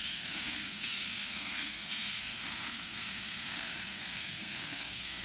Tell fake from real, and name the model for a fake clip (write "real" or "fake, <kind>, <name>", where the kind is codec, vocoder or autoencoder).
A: fake, codec, SNAC